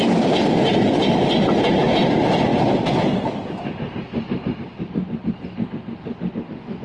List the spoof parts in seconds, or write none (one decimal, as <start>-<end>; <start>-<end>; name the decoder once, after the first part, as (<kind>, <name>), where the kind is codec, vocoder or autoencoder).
none